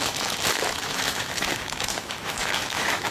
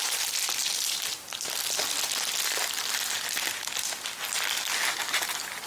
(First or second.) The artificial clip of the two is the first